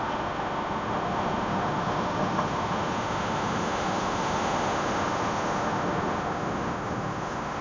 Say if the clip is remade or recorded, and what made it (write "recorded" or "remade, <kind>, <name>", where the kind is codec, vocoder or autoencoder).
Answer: remade, autoencoder, DAC-VAE